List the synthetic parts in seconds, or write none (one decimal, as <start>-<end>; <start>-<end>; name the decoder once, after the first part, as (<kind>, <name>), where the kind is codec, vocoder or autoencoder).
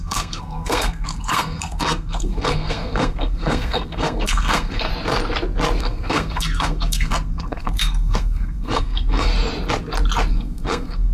0.0-4.9 (codec, SNAC); 5.8-9.3; 10.3-11.1